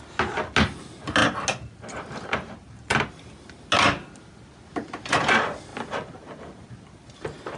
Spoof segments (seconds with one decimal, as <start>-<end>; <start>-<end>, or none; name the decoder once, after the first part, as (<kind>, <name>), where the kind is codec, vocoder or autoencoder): none